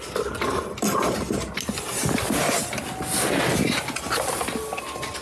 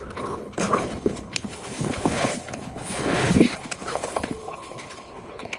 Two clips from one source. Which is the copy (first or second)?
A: second